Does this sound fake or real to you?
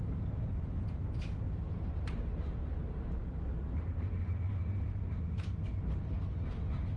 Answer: real